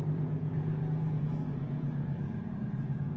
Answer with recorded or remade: remade